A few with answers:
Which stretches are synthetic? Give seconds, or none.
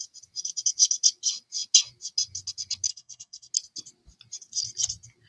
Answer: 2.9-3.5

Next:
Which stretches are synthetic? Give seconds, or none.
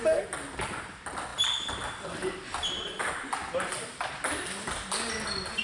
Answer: none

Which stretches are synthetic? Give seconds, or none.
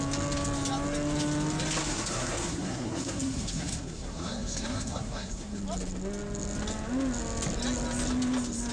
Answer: 1.8-5.6